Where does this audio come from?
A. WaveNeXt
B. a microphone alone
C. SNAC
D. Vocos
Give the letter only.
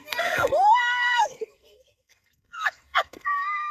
C